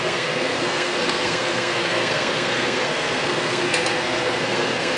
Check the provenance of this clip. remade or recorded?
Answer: remade